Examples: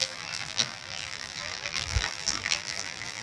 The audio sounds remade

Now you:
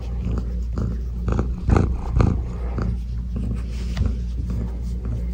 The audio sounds recorded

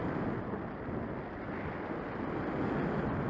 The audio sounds recorded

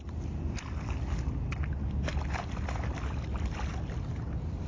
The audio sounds recorded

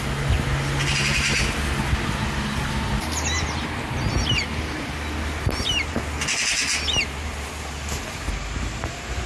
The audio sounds recorded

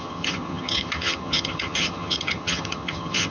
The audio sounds remade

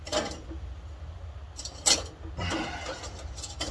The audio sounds recorded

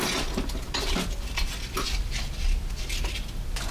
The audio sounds recorded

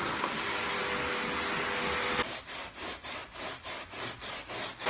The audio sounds recorded